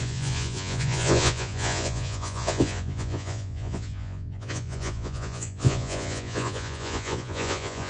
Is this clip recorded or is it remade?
remade